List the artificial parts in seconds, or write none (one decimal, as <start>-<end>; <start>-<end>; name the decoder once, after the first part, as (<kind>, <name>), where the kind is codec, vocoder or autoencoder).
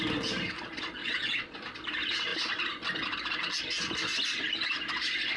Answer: 1.0-1.6 (vocoder, Vocos)